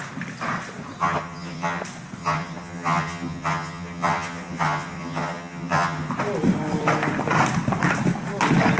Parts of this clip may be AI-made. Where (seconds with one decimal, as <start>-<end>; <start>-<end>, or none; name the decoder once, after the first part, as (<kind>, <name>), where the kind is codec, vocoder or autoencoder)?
1.0-1.8 (vocoder, HiFi-GAN); 2.2-6.1